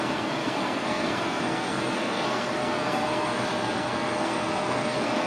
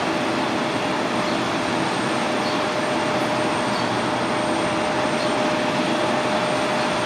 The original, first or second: second